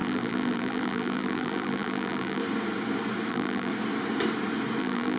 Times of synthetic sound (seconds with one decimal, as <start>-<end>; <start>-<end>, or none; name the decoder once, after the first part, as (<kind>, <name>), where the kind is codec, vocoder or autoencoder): 0.0-2.4 (vocoder, BigVGAN v2); 3.3-3.7; 4.8-5.2